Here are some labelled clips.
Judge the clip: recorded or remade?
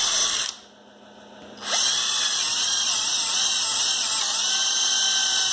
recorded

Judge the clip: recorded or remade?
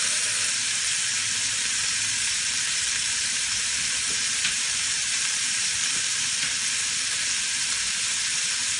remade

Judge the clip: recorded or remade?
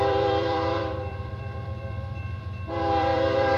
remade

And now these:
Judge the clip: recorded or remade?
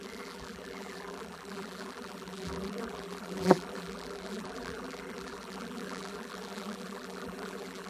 remade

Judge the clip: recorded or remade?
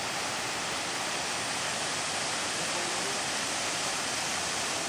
remade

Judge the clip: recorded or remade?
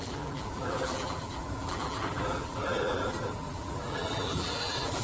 remade